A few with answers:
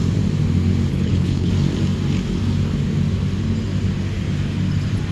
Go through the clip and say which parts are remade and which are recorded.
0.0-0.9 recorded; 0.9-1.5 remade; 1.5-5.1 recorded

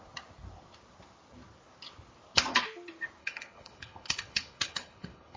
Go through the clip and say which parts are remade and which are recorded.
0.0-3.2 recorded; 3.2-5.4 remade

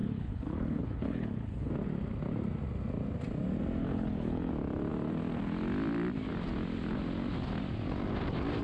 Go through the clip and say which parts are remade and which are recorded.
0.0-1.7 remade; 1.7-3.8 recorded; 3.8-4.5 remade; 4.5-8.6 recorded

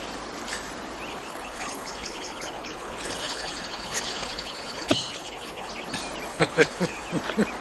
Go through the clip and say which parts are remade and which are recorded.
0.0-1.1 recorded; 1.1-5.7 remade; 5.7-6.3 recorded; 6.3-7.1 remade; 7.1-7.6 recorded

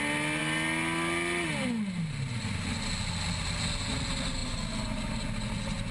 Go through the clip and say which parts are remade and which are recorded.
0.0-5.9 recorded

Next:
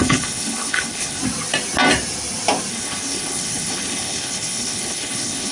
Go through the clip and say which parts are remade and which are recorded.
0.0-1.2 remade; 1.2-2.7 recorded; 2.7-5.5 remade

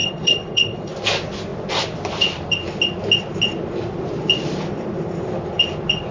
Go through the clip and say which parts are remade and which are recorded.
0.0-0.9 remade; 0.9-6.1 recorded